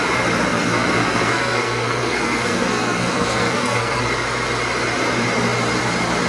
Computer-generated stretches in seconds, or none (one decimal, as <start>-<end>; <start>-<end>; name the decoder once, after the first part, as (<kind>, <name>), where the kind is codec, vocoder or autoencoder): 0.5-4.0 (codec, SNAC)